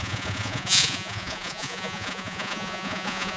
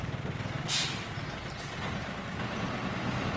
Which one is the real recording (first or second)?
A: second